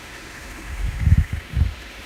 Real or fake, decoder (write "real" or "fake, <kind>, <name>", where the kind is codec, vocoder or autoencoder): fake, autoencoder, DAC-VAE